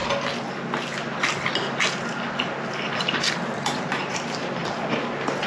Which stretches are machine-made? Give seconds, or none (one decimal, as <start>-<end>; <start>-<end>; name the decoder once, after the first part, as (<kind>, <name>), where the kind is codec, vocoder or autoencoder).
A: 3.3-4.6 (vocoder, BigVGAN v2)